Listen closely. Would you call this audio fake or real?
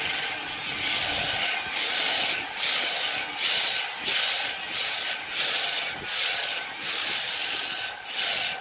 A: real